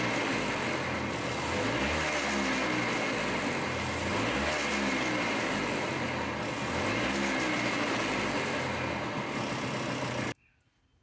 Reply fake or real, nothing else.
real